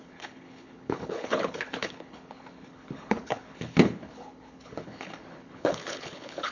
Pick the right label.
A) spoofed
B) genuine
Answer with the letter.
A